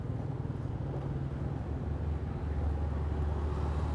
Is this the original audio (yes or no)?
yes